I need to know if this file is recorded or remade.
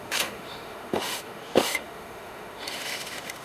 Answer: remade